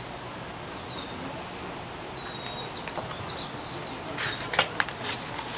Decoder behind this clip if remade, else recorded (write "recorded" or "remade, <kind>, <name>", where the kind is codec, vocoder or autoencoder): recorded